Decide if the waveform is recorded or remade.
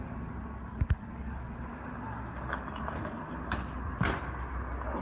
recorded